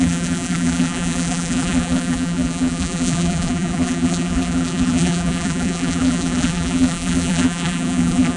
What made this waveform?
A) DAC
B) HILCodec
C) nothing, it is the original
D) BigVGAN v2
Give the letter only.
D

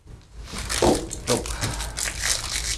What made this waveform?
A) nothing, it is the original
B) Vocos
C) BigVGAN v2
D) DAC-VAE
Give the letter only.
A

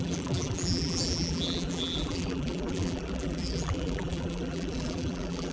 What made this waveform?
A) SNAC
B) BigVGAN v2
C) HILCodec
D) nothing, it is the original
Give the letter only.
B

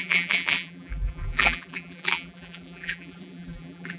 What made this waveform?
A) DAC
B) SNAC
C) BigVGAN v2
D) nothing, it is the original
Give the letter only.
C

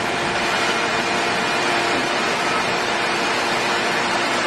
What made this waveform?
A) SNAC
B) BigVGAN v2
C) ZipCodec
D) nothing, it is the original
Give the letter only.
B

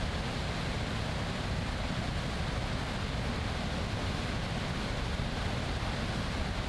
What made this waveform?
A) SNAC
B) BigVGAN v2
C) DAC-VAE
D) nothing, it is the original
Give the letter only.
D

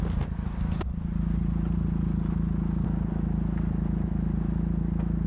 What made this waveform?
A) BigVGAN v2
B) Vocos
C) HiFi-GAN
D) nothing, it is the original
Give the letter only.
D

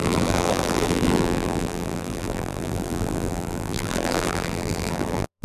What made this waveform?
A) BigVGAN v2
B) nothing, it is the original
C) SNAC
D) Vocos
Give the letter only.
A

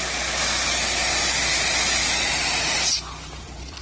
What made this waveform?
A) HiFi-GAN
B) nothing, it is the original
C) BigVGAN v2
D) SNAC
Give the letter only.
B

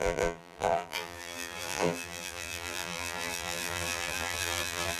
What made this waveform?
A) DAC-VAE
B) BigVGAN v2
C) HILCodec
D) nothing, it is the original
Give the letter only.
B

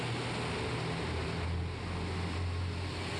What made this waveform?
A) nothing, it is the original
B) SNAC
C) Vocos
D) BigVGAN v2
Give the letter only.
A